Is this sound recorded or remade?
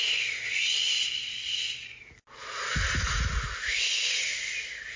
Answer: recorded